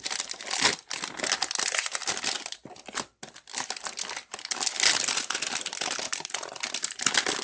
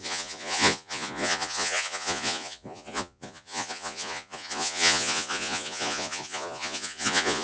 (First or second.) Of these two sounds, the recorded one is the first